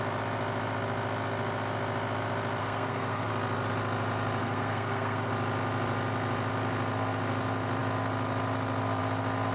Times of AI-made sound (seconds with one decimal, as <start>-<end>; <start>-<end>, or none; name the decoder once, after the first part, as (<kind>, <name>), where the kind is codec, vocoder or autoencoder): 2.6-3.3 (codec, SNAC); 4.4-5.3